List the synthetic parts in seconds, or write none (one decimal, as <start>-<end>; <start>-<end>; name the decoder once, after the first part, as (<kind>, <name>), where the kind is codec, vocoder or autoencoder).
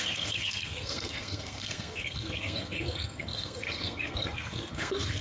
0.0-5.2 (codec, SNAC)